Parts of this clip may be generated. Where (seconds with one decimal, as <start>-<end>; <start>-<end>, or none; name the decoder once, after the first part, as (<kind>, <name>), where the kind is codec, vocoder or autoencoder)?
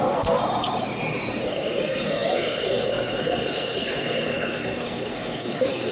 0.0-0.4 (codec, SNAC); 1.5-5.9